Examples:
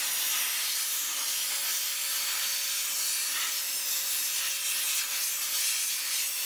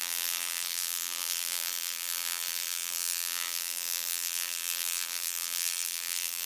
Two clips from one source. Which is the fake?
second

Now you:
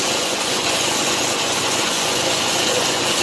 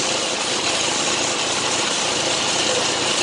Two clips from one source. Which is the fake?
first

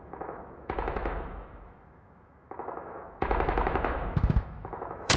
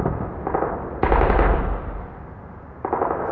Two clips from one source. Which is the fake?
first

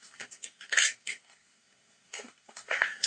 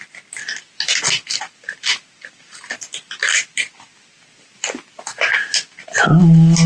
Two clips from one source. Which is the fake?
first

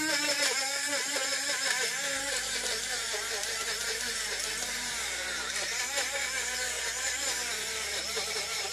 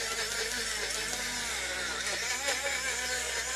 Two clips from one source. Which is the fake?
first